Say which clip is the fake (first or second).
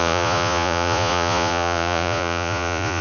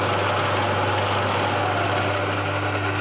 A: first